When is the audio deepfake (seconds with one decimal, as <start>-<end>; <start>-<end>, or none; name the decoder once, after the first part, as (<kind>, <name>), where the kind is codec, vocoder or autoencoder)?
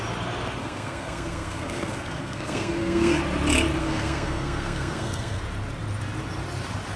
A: 0.6-3.2 (codec, SNAC); 3.8-5.4